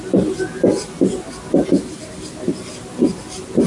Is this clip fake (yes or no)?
no